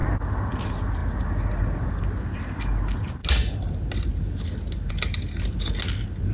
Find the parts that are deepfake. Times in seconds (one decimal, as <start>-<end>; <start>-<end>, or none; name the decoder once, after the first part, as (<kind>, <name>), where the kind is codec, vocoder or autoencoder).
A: none